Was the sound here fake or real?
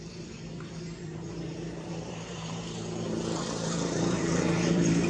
fake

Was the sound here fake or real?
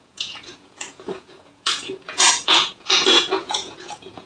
fake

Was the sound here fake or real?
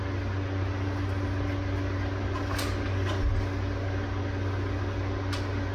real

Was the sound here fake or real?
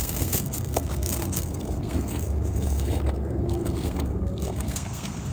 fake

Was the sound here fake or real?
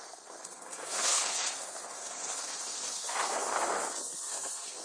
fake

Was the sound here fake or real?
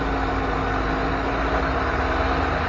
real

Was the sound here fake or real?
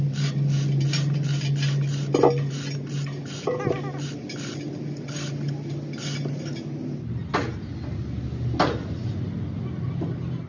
real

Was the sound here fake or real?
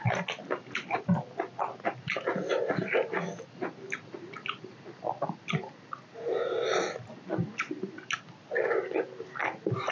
real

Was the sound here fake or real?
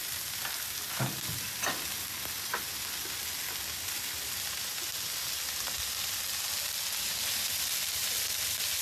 real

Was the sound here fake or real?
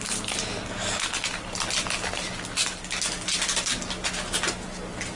real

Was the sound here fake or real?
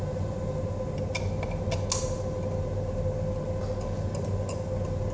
real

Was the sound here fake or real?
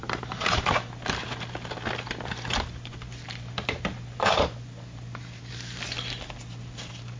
real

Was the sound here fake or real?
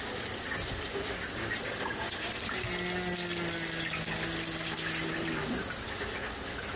real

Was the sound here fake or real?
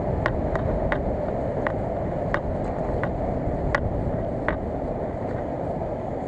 real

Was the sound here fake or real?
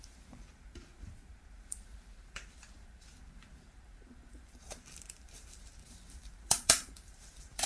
fake